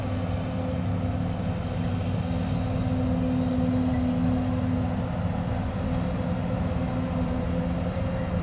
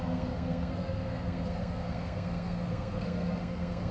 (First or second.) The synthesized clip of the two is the second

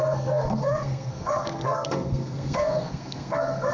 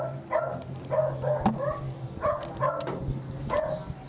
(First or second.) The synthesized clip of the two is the first